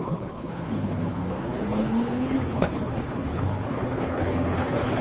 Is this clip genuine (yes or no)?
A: no